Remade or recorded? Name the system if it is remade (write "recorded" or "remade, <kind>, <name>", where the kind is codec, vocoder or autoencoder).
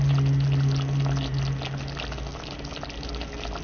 recorded